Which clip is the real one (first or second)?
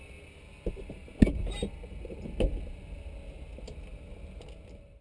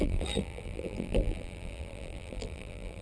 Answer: first